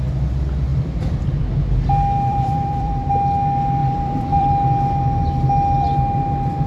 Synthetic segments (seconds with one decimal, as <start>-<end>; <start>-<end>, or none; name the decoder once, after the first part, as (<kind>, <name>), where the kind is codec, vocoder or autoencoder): 0.7-1.4 (vocoder, BigVGAN v2); 2.3-3.1; 3.8-4.5

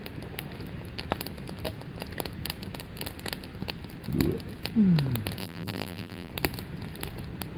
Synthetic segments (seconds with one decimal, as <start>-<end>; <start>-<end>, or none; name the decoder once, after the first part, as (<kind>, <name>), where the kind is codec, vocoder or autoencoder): 5.4-6.3 (vocoder, BigVGAN v2)

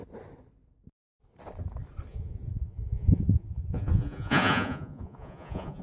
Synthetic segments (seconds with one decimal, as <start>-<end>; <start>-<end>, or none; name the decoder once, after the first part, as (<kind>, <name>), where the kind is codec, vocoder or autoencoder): 2.1-5.8 (vocoder, Vocos)

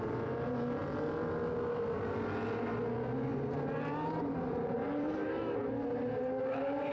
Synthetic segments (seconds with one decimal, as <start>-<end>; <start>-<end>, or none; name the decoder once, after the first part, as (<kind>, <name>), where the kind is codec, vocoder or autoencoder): 3.3-5.6 (vocoder, BigVGAN v2)

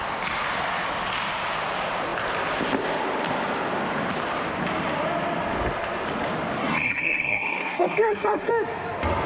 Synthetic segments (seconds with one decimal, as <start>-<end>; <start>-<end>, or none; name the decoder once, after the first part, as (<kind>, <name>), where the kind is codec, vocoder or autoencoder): 6.6-8.5 (codec, SNAC)